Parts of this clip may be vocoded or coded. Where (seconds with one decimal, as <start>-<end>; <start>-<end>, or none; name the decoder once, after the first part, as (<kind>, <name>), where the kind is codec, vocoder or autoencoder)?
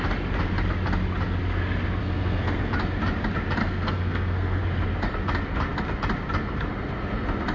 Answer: 2.0-2.7 (codec, SNAC); 3.6-4.6